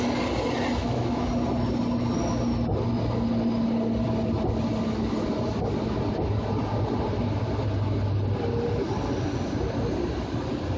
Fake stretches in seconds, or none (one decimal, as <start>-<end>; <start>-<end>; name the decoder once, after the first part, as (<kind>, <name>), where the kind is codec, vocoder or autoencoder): 0.8-1.3 (autoencoder, DAC-VAE)